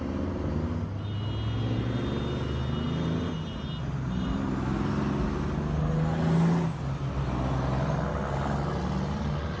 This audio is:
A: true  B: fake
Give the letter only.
A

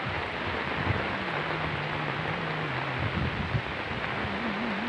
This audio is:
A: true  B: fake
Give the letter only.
A